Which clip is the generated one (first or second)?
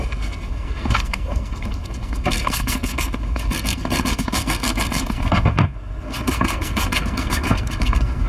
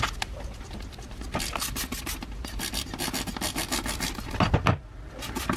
first